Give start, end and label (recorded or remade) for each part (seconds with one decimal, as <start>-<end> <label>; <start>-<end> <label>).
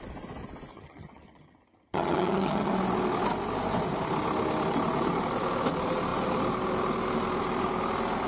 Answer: 0.0-0.7 recorded; 0.7-2.7 remade; 2.7-8.3 recorded